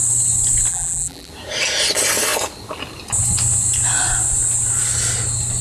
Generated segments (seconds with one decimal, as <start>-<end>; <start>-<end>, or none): 0.7-1.3